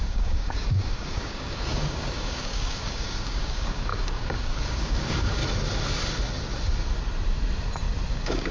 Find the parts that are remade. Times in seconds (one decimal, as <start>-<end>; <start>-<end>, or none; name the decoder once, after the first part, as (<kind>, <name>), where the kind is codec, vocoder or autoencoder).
0.0-5.4 (codec, DAC); 8.1-8.5